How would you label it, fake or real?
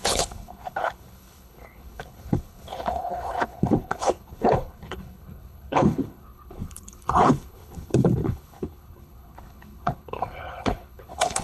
fake